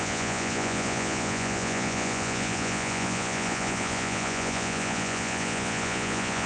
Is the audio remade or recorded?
remade